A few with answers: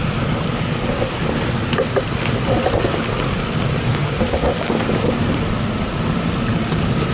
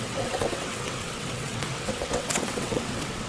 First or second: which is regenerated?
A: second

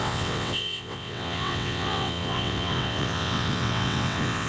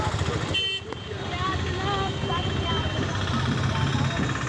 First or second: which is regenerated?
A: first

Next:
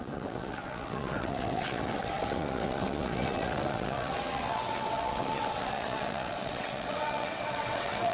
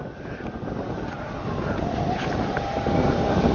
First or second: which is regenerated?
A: first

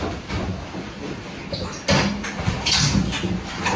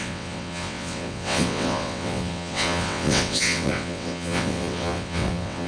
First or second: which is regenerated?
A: second